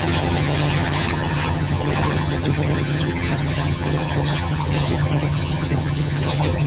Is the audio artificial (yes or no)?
yes